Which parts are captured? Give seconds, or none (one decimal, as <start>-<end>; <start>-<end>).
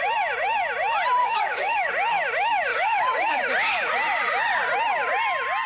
0.0-1.2; 1.9-2.7; 3.4-5.7